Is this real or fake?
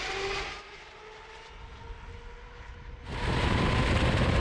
real